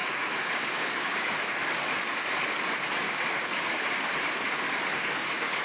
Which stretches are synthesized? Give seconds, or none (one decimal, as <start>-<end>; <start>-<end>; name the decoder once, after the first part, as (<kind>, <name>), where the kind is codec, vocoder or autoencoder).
0.0-1.3 (codec, DAC); 3.0-3.7; 4.9-5.6